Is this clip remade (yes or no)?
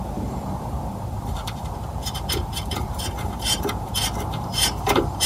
yes